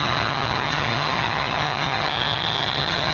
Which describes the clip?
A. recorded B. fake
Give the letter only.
B